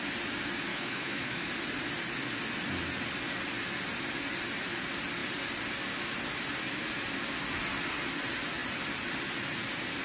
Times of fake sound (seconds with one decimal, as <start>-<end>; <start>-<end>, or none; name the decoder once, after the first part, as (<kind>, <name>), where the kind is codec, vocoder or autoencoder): 0.7-1.5 (autoencoder, DAC-VAE)